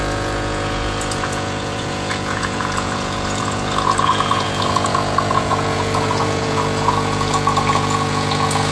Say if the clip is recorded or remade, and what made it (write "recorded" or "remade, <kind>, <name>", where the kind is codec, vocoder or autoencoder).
remade, vocoder, Vocos